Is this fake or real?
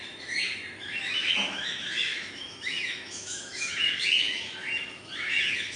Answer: fake